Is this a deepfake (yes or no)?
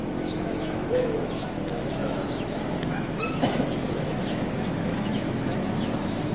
yes